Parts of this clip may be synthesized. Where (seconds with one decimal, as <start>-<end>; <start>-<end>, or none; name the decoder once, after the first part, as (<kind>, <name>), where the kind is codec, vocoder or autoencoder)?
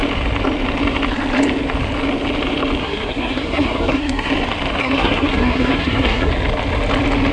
2.8-4.3 (codec, SNAC); 4.8-6.3